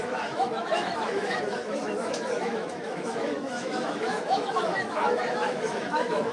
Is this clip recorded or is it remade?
remade